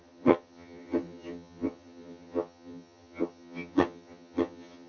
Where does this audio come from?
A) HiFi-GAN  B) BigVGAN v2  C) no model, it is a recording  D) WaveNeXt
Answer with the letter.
A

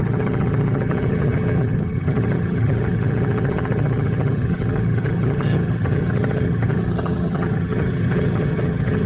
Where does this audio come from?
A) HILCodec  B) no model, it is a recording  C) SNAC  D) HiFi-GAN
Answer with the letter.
D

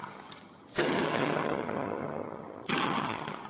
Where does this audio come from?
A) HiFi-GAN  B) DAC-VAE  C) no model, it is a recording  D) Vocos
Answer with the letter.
A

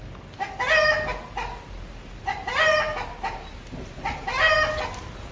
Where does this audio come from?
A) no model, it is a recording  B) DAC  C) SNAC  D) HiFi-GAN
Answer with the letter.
A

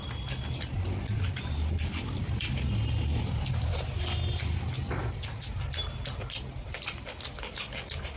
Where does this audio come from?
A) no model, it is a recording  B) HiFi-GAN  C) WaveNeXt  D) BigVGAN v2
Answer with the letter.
A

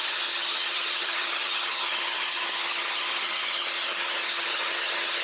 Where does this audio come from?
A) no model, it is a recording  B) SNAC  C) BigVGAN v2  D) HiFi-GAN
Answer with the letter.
D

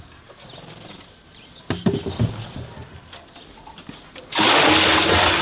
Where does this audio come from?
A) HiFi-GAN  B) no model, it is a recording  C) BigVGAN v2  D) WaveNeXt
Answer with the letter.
B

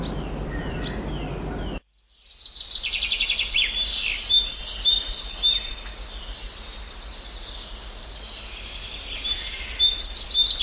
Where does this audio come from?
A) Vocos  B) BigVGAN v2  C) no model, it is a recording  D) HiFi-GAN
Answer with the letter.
C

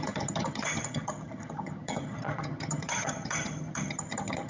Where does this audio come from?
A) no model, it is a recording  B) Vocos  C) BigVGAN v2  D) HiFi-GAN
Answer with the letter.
D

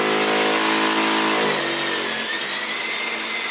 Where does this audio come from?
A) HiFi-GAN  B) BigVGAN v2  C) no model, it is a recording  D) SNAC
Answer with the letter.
C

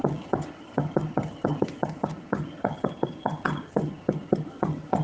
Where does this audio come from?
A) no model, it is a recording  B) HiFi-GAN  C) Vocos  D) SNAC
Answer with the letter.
B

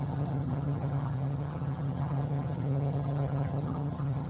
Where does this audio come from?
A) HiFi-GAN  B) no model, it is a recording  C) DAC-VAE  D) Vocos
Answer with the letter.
A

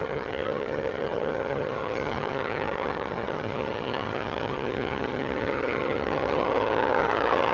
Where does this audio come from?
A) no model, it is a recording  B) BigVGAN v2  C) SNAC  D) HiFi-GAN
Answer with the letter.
D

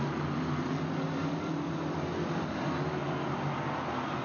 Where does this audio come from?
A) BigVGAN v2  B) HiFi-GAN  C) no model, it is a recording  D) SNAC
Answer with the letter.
C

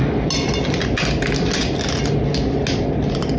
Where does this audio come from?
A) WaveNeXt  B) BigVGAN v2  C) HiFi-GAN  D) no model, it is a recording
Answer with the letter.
D